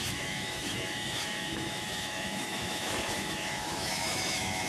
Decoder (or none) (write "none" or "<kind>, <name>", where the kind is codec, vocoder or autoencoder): autoencoder, DAC-VAE